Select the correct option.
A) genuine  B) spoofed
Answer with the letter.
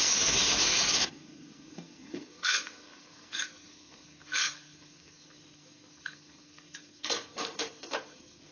B